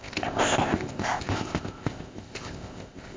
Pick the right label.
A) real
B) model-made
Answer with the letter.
B